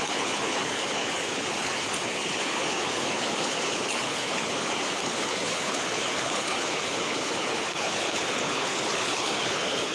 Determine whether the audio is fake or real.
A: fake